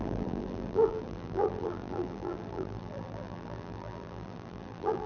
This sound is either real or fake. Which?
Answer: fake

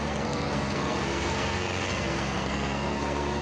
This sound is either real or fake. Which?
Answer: fake